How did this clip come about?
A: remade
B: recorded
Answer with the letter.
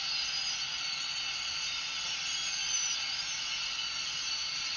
B